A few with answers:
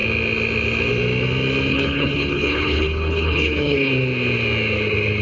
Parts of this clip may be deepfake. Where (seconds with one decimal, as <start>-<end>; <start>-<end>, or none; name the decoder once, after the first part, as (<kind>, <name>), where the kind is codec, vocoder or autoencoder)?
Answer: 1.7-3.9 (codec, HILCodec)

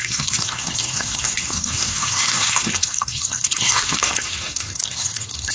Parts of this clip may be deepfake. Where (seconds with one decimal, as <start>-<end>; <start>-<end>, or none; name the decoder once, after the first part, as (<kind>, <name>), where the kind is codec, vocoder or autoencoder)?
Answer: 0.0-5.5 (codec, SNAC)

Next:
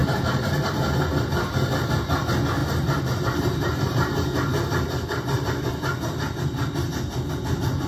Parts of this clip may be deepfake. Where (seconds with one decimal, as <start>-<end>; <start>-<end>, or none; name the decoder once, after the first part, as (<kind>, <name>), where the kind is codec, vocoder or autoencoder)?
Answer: 0.0-1.0 (vocoder, BigVGAN v2); 2.6-7.3

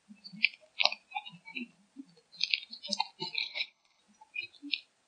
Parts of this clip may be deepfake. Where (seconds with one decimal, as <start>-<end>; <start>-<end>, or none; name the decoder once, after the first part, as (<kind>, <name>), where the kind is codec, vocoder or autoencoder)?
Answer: 3.4-4.0 (codec, HILCodec)

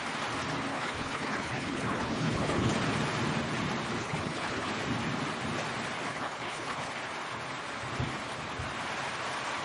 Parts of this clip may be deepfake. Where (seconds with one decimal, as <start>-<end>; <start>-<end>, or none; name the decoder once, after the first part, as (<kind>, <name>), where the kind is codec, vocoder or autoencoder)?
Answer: 0.7-2.7 (codec, HILCodec); 4.0-4.7; 6.1-6.9